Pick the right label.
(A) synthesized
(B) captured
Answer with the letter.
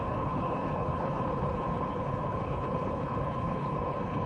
A